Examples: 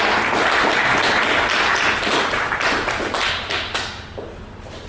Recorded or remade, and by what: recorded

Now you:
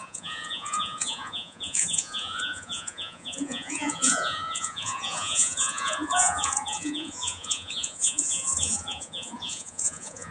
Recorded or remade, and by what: remade, vocoder, Vocos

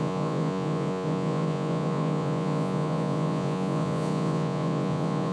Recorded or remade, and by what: remade, vocoder, Vocos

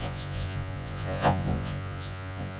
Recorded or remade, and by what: remade, vocoder, Vocos